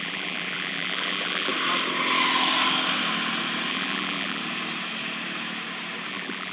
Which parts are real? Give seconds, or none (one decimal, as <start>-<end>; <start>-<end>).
1.5-3.7; 4.4-6.1